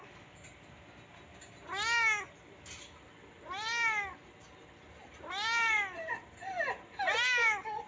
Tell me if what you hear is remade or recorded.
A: recorded